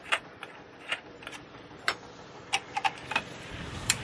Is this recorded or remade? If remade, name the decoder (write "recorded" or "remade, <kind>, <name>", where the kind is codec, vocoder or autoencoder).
remade, vocoder, BigVGAN v2